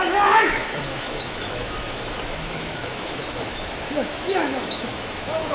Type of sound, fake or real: fake